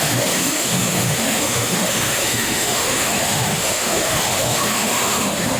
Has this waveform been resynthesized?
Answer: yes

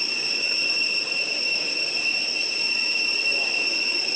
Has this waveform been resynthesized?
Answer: no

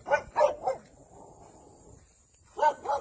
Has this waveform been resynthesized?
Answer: no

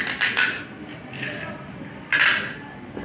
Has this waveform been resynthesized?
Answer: no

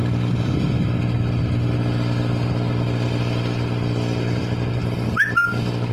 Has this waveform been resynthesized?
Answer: no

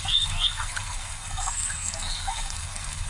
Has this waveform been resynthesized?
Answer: yes